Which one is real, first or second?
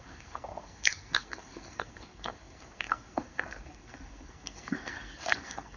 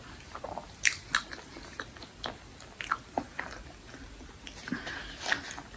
second